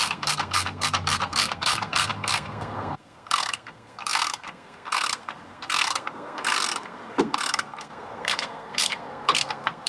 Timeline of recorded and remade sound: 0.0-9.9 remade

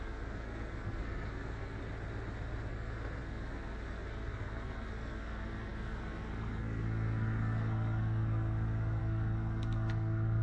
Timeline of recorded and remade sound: 0.0-1.8 remade; 1.8-2.7 recorded; 2.7-10.4 remade

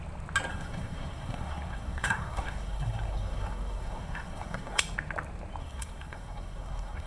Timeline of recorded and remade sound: 0.0-0.5 recorded; 0.5-4.8 remade; 4.8-5.6 recorded; 5.6-7.1 remade

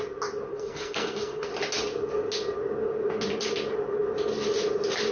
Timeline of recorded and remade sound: 0.0-0.5 recorded; 0.5-1.5 remade; 1.5-5.1 recorded

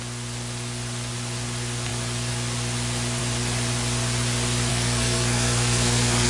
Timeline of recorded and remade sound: 0.0-4.7 recorded; 4.7-6.3 remade